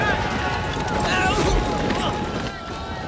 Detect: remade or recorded recorded